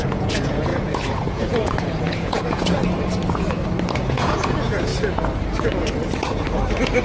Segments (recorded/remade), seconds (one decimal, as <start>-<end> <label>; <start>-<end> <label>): 0.0-2.8 remade; 2.8-4.0 recorded; 4.0-4.9 remade; 4.9-7.0 recorded